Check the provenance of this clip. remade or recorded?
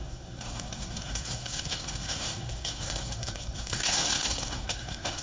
remade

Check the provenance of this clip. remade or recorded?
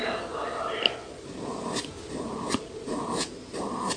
recorded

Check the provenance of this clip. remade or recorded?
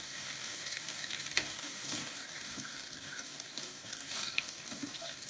remade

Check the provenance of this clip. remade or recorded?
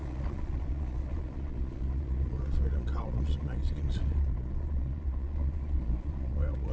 remade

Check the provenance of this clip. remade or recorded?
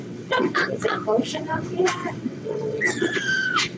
remade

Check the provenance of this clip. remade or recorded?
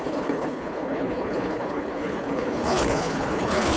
remade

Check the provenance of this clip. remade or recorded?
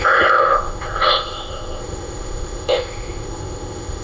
remade